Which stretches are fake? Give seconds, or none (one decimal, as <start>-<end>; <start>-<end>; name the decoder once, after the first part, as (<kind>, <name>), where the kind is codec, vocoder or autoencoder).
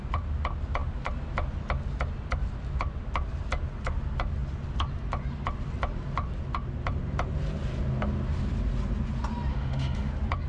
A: 9.5-10.1 (autoencoder, DAC-VAE)